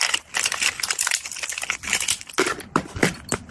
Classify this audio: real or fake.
real